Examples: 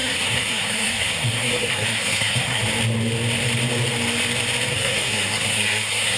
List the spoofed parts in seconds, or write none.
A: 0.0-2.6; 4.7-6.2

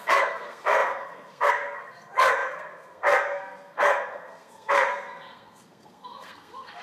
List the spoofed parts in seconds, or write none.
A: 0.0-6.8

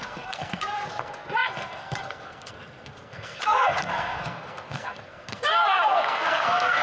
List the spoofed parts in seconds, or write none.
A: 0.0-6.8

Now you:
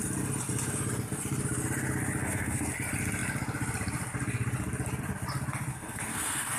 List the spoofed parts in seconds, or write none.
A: 2.2-2.7; 5.7-6.6

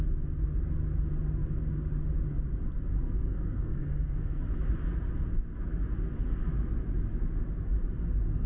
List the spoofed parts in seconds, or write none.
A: 3.2-4.4

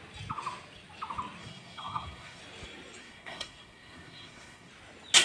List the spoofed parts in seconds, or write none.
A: 1.4-2.4; 3.0-4.7

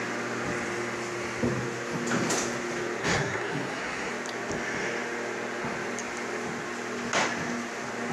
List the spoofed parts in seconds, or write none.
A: 3.0-4.1

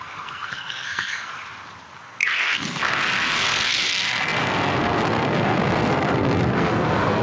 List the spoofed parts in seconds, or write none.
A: 0.0-1.3; 2.0-7.2